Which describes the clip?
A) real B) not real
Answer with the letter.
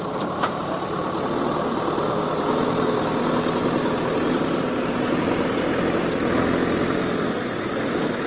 A